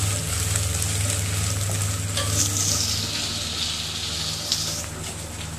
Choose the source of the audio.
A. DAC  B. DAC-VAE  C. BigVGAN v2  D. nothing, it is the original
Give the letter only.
D